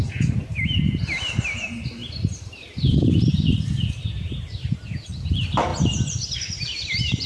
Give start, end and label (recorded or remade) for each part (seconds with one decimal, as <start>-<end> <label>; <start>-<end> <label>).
0.0-7.3 remade